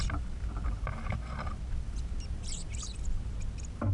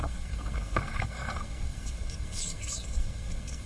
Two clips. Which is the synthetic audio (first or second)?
second